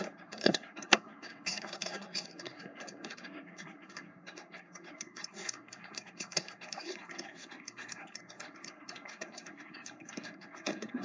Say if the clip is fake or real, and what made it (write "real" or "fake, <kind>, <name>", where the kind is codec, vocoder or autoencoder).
fake, codec, SNAC